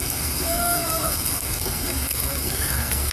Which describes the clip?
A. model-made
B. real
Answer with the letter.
A